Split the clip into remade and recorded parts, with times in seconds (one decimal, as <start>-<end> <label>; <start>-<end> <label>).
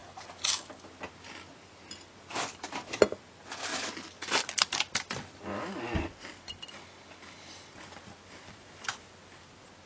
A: 0.0-9.9 recorded